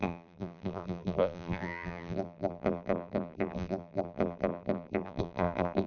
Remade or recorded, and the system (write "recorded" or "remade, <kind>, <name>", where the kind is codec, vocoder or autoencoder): remade, vocoder, BigVGAN v2